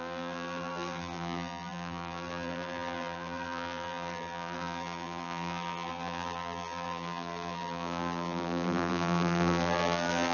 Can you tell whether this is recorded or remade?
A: remade